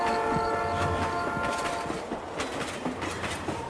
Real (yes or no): yes